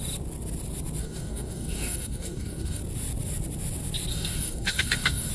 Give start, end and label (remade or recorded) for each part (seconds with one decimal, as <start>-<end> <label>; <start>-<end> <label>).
0.0-1.0 recorded; 1.0-2.8 remade; 2.8-4.1 recorded; 4.1-5.3 remade